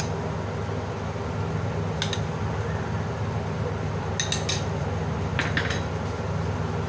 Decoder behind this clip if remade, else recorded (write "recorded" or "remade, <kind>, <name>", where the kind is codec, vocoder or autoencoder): recorded